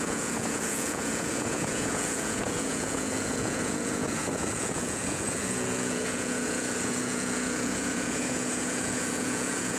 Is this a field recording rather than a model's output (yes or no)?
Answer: no